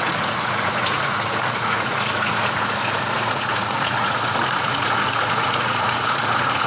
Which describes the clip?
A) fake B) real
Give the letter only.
A